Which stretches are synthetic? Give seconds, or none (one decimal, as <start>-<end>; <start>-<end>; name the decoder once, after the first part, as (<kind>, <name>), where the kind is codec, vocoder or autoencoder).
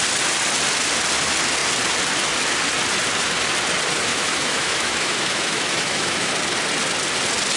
4.1-6.3 (autoencoder, DAC-VAE)